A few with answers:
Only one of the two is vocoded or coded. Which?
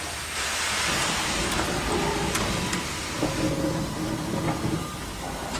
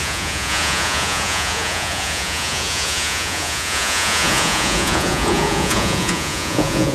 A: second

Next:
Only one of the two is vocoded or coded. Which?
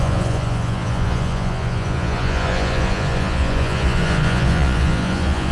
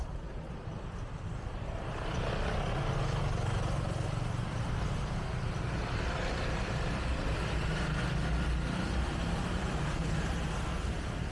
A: first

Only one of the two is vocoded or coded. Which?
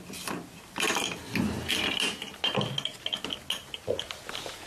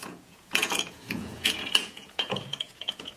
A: second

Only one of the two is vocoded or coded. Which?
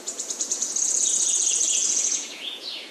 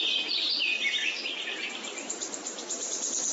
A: first